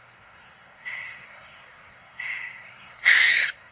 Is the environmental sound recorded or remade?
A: remade